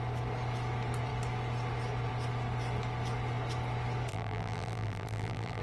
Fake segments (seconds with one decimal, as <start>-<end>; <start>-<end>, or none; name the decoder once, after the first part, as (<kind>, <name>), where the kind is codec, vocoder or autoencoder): 4.1-5.6 (vocoder, BigVGAN v2)